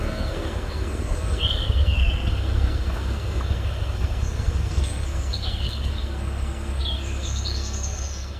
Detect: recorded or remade remade